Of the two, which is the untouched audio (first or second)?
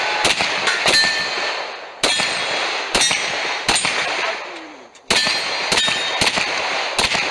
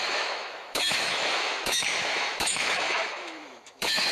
first